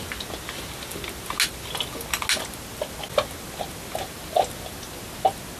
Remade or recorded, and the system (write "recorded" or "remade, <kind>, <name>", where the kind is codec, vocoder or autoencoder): recorded